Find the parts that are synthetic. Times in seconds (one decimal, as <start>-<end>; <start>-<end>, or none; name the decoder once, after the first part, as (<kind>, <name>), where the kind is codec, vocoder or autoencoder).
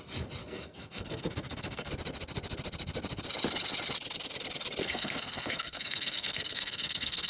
0.4-1.9 (codec, SNAC); 4.8-7.3